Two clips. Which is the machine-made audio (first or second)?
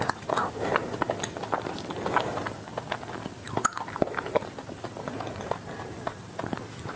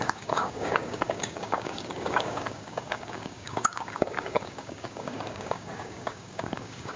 second